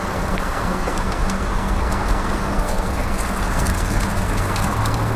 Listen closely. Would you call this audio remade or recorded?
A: remade